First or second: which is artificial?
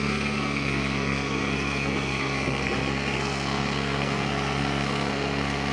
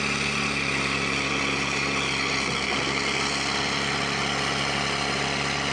first